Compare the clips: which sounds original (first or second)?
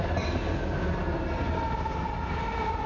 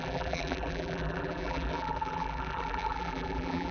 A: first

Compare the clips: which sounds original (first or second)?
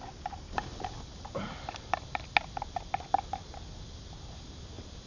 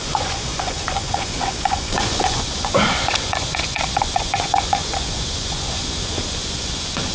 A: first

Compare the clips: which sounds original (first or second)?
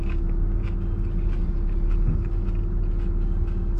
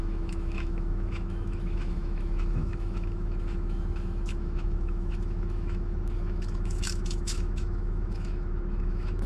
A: first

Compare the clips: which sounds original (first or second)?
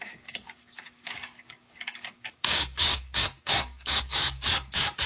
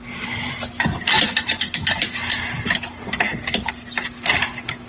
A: second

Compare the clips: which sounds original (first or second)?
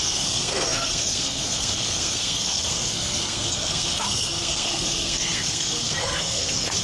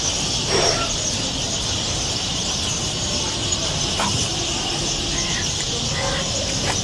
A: second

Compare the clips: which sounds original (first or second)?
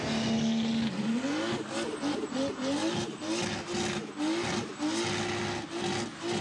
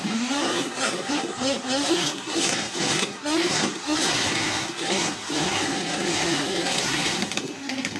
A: first